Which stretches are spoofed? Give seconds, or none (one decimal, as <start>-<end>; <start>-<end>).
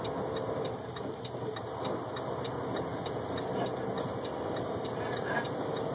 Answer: none